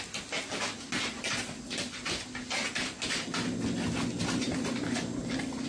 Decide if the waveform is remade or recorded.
recorded